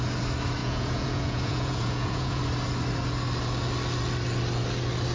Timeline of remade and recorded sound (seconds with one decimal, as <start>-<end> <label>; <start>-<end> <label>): 0.0-0.6 recorded; 0.6-2.4 remade; 2.4-5.1 recorded